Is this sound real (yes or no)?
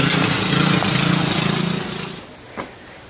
yes